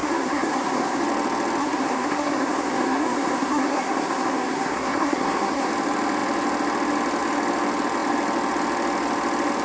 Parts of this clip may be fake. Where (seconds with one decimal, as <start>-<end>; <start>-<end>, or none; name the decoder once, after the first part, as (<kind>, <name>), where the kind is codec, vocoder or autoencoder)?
0.0-1.0 (codec, SNAC); 1.6-5.7

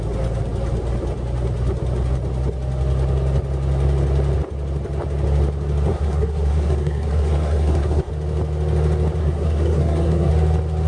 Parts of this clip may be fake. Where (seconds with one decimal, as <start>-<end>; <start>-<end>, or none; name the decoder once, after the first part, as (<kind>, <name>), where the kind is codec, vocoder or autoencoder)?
5.9-8.1 (codec, SNAC); 9.2-10.3